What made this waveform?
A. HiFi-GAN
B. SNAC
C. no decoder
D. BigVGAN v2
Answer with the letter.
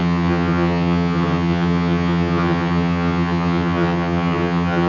A